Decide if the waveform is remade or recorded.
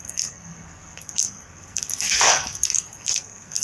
remade